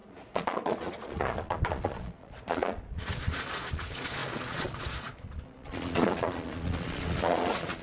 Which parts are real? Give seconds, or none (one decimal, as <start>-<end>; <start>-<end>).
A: none